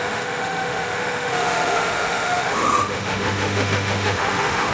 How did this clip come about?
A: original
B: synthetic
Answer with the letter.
B